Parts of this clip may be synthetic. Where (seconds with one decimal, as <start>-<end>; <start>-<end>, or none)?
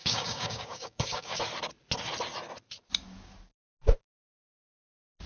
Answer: 0.0-1.4